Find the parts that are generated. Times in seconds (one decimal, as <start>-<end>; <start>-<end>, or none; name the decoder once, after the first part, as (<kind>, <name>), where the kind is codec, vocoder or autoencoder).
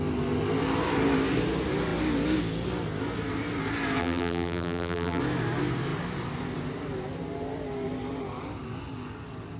4.0-5.2 (vocoder, BigVGAN v2)